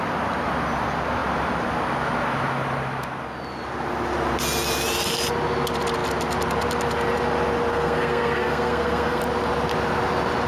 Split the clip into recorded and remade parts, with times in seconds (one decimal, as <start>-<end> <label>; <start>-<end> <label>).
0.0-7.7 recorded; 7.7-9.2 remade; 9.2-10.5 recorded